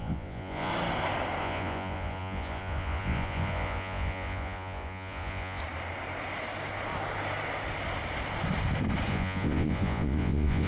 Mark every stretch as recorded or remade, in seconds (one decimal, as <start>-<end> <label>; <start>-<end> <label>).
0.0-0.7 remade; 0.7-1.4 recorded; 1.4-5.6 remade; 5.6-9.1 recorded; 9.1-10.7 remade